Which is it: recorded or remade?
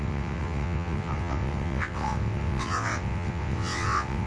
remade